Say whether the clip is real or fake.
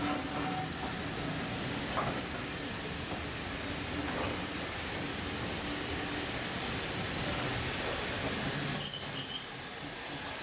real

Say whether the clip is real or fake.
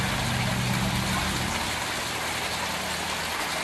real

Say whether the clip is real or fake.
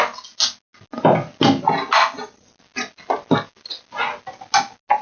real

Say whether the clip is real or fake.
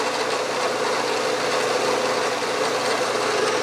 real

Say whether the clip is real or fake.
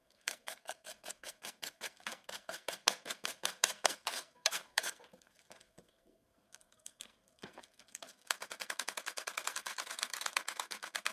fake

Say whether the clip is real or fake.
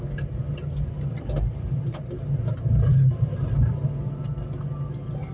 real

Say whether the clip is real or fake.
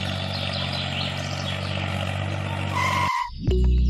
real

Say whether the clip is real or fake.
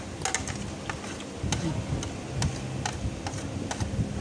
real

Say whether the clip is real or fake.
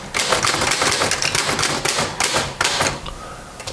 real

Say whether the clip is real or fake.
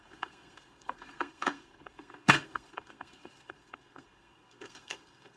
fake